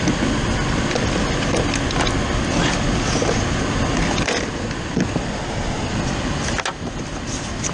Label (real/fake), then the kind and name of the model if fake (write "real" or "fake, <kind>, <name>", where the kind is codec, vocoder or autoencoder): real